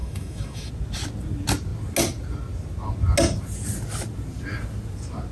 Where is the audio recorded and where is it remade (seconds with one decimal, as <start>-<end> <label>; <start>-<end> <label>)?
0.0-0.7 remade; 0.7-5.3 recorded